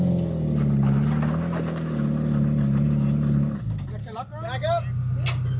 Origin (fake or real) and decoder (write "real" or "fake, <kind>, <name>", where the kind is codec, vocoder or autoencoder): real